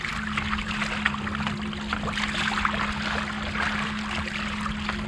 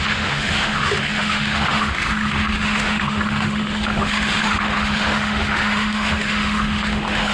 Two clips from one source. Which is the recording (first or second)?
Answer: first